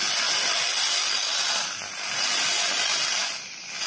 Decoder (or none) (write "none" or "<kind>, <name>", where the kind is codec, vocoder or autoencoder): none